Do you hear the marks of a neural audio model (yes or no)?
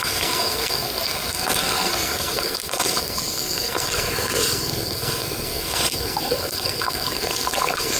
yes